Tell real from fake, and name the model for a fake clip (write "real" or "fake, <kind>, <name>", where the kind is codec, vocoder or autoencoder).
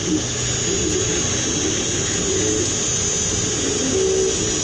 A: real